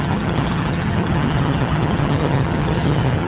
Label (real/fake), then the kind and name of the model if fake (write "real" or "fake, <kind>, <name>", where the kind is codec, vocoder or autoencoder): fake, vocoder, HiFi-GAN